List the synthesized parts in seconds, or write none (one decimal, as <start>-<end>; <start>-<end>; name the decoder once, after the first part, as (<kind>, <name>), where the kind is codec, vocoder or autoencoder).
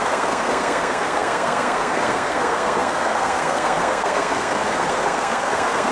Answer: 0.0-5.9 (codec, SNAC)